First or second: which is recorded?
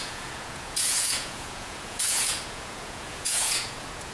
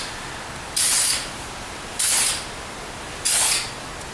second